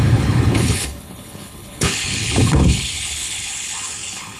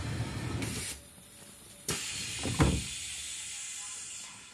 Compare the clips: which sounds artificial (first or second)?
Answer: first